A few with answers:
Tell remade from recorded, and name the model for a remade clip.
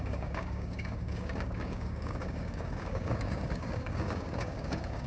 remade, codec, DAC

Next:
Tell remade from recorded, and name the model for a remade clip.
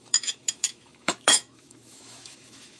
remade, autoencoder, DAC-VAE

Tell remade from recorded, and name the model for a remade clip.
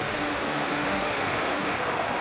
remade, autoencoder, DAC-VAE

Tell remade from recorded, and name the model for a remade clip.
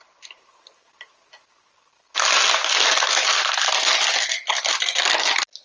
recorded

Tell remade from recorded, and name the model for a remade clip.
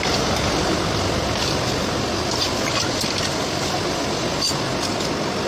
recorded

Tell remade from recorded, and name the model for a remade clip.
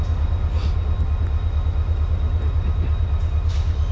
recorded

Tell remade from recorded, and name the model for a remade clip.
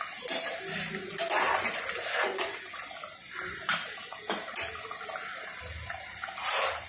recorded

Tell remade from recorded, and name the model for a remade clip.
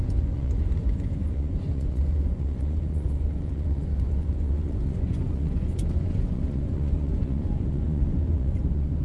remade, vocoder, Vocos